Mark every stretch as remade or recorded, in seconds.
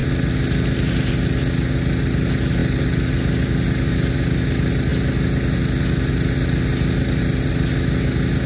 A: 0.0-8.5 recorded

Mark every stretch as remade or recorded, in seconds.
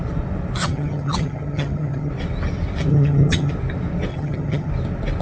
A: 0.0-0.6 recorded; 0.6-2.1 remade; 2.1-2.9 recorded; 2.9-3.5 remade; 3.5-4.1 recorded; 4.1-4.7 remade; 4.7-5.2 recorded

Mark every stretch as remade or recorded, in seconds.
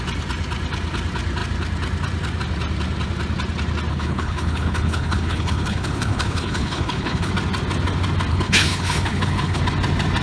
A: 0.0-3.9 recorded; 3.9-7.3 remade; 7.3-8.3 recorded; 8.3-9.6 remade; 9.6-10.2 recorded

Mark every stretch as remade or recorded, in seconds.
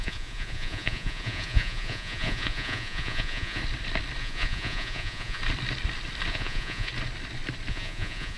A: 0.0-3.6 remade; 3.6-4.2 recorded; 4.2-5.4 remade; 5.4-6.3 recorded; 6.3-6.9 remade; 6.9-7.7 recorded; 7.7-8.4 remade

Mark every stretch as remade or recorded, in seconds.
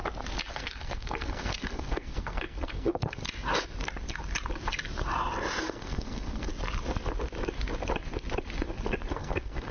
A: 0.0-0.5 recorded; 0.5-3.2 remade; 3.2-5.6 recorded; 5.6-6.5 remade; 6.5-9.1 recorded; 9.1-9.7 remade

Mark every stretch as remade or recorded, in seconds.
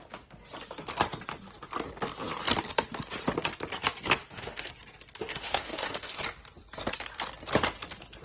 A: 0.0-4.2 recorded; 4.2-4.7 remade; 4.7-5.3 recorded; 5.3-6.2 remade; 6.2-8.2 recorded